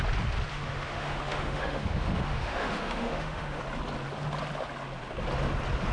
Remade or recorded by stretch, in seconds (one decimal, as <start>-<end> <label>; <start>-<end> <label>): 0.0-0.5 recorded; 0.5-3.6 remade; 3.6-5.9 recorded